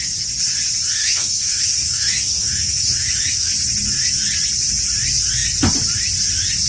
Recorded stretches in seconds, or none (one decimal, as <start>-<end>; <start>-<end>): 0.0-1.0; 3.5-6.7